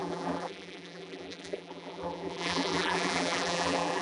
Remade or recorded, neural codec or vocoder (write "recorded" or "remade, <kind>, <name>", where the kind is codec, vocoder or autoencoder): remade, vocoder, BigVGAN v2